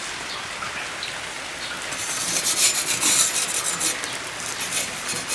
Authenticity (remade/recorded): recorded